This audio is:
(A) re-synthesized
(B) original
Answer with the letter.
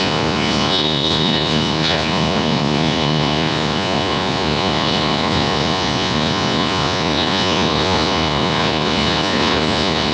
A